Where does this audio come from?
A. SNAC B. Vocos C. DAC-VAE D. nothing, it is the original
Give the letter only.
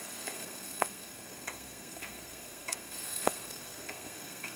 A